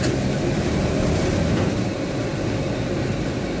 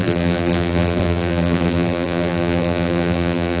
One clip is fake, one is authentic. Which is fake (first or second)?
second